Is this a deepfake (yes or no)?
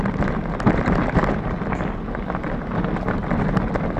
no